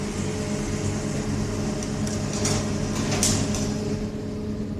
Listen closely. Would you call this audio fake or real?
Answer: real